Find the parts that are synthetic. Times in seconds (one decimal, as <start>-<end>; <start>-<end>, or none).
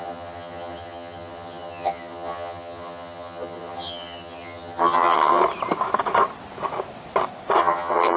0.0-5.4; 7.6-8.2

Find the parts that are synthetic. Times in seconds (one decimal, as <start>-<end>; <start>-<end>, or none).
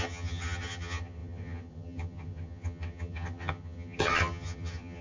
0.0-5.0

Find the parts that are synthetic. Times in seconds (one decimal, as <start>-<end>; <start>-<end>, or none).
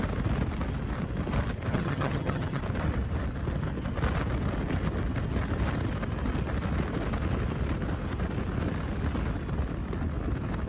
1.7-2.6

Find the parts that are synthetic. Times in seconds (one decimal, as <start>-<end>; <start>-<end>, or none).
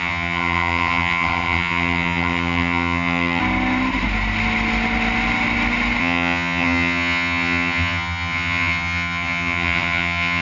0.0-3.4; 6.0-10.4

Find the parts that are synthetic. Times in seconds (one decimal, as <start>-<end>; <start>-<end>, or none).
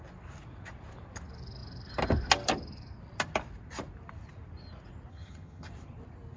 5.1-5.7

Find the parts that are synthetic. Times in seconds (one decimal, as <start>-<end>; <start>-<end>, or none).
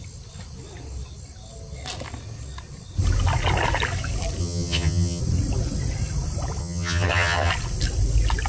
4.4-5.2; 6.6-7.5